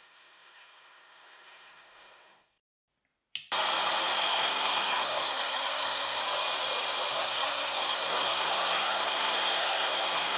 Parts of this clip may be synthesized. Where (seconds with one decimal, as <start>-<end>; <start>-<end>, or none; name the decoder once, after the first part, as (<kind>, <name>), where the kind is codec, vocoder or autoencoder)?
0.0-2.6 (codec, SNAC); 4.2-6.2; 7.1-10.4